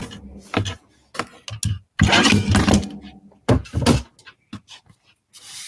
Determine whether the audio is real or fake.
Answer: real